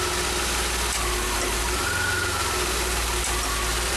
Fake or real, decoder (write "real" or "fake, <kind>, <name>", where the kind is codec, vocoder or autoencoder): real